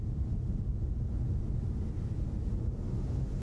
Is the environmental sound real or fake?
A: real